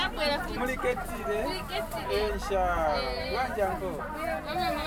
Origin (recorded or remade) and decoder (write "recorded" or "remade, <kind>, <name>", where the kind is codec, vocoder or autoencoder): recorded